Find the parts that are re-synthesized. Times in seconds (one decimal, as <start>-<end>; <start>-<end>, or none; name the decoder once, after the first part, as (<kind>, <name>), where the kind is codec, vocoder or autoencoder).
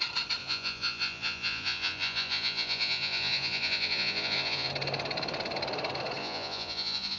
0.4-4.7 (vocoder, Vocos); 6.2-7.2